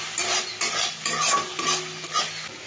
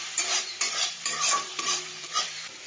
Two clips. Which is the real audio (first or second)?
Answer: first